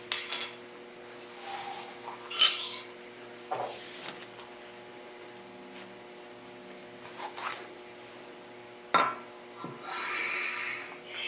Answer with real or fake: real